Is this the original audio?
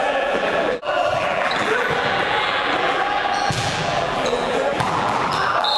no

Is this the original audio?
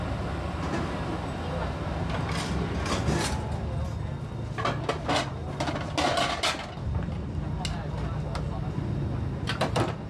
yes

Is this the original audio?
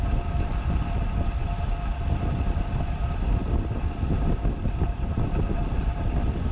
yes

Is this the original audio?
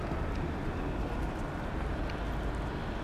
yes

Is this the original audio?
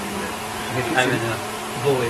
yes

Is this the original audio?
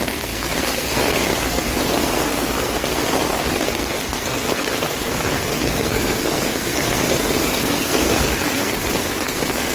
no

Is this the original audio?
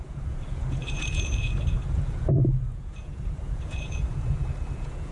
no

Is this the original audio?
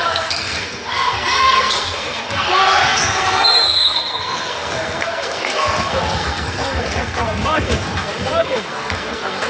no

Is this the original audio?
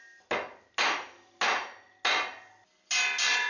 yes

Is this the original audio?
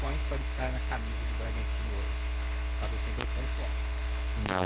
no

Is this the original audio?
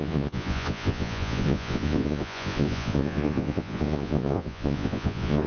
no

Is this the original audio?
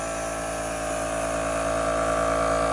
yes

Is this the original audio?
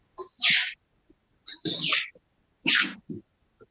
yes